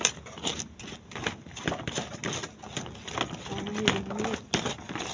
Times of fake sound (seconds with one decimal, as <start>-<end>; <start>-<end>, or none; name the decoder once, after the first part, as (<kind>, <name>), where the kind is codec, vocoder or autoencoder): none